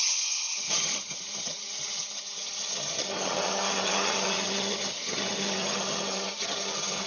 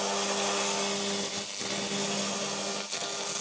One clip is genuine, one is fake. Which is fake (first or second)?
first